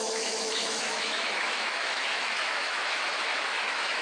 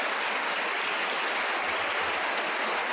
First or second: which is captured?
second